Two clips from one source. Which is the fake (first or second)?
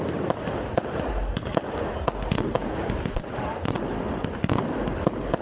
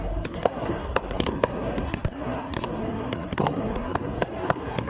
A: second